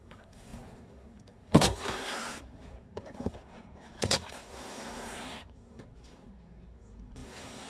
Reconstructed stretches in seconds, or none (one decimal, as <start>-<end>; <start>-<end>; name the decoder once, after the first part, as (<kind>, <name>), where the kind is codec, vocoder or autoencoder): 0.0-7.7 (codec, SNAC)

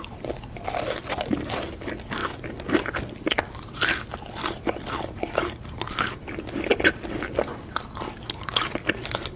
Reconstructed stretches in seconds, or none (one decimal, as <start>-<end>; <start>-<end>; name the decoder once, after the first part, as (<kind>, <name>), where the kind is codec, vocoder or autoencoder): none

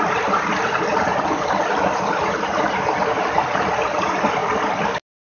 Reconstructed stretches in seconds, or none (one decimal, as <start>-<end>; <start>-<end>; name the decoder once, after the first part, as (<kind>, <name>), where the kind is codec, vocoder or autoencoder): none